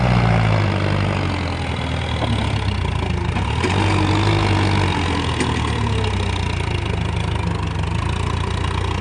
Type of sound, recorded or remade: recorded